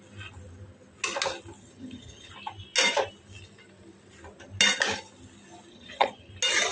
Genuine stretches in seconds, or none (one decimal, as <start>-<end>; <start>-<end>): 0.0-1.6; 2.3-5.7; 6.3-6.7